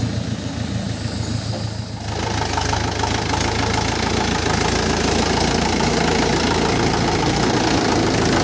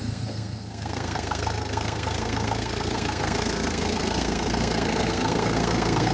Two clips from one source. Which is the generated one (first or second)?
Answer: second